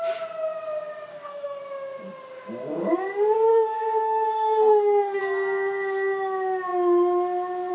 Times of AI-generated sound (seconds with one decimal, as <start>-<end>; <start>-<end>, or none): 1.1-1.6; 3.5-5.2